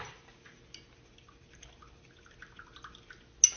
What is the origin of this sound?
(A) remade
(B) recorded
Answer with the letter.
B